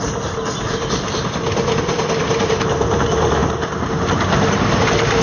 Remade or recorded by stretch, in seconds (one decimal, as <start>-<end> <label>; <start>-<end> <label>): 0.0-5.2 recorded